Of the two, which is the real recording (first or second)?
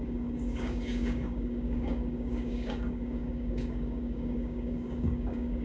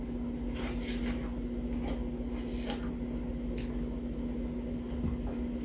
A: second